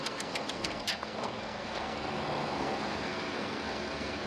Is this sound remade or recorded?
remade